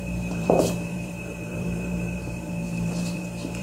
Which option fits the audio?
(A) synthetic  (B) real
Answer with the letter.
A